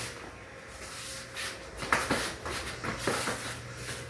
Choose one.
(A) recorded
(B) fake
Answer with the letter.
A